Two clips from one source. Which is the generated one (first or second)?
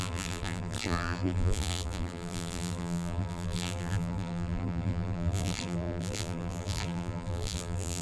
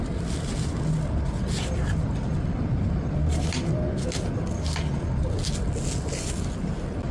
first